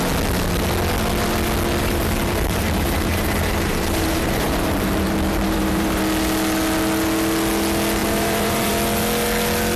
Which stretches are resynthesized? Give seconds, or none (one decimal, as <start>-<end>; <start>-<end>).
1.8-6.0; 8.0-8.7